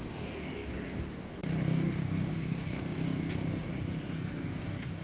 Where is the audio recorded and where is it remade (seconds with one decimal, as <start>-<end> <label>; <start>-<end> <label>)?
0.0-5.0 remade